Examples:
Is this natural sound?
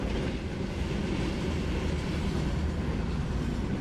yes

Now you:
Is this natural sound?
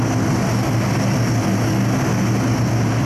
yes